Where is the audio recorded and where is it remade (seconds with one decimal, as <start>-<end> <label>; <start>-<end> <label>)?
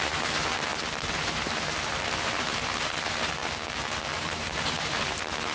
0.0-3.4 remade; 3.4-4.2 recorded; 4.2-5.5 remade